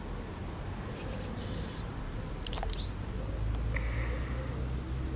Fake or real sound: real